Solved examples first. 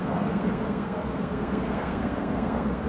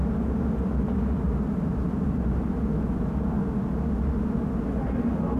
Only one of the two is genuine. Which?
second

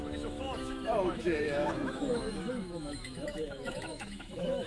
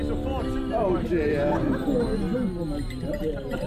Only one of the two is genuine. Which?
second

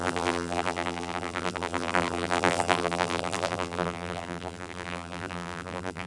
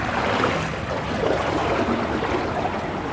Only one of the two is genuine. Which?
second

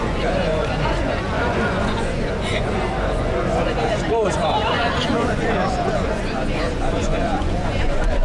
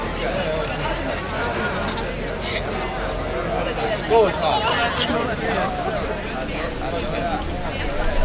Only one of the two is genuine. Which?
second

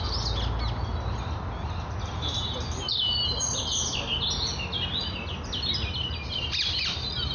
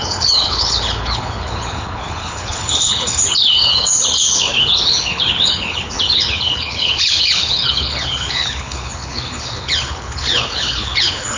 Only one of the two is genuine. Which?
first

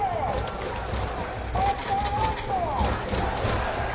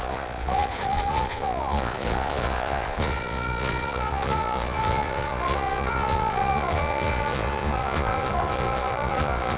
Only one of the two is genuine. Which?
first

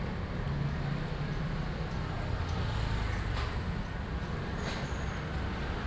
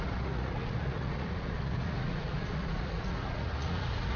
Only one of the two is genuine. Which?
first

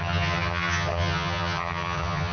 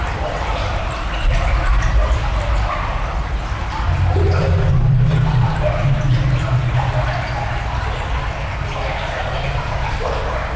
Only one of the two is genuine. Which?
second